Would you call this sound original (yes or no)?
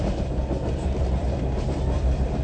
no